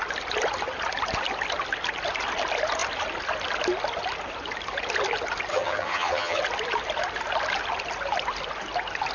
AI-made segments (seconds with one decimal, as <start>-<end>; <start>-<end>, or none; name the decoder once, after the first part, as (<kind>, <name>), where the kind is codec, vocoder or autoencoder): 5.5-6.4 (vocoder, HiFi-GAN)